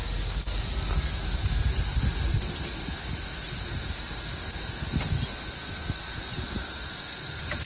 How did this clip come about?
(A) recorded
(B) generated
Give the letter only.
A